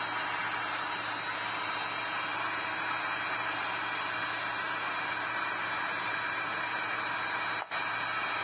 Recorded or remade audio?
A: recorded